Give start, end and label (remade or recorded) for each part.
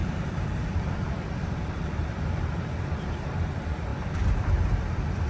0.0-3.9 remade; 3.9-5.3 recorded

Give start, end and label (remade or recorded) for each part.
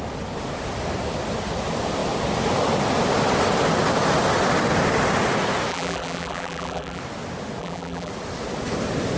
0.0-5.7 recorded; 5.7-7.0 remade; 7.0-7.6 recorded; 7.6-8.1 remade; 8.1-9.2 recorded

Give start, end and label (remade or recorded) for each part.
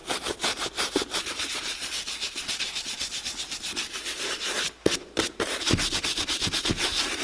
0.0-7.2 remade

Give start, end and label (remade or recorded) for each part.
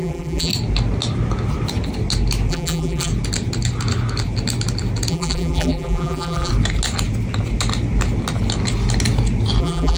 0.0-0.5 remade; 0.5-2.5 recorded; 2.5-3.1 remade; 3.1-5.1 recorded; 5.1-6.5 remade; 6.5-9.6 recorded; 9.6-10.0 remade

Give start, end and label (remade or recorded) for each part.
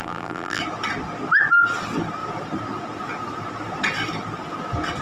0.0-0.6 remade; 0.6-5.0 recorded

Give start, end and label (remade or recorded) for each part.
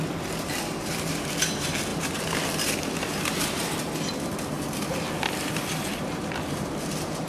0.0-7.3 recorded